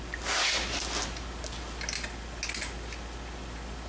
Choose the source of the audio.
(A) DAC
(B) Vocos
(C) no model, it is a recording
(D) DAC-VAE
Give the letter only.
C